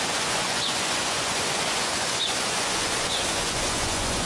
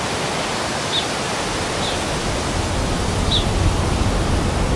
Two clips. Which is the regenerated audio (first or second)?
first